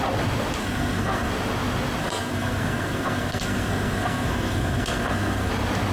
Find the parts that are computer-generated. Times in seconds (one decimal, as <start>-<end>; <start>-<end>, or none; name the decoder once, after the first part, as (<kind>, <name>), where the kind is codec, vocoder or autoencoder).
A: 0.6-1.3 (codec, SNAC); 2.0-5.5